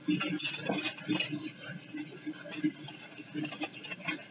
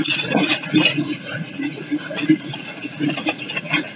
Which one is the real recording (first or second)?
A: first